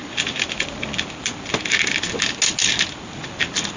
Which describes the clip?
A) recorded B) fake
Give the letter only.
A